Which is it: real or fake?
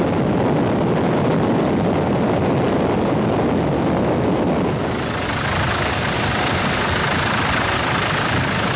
real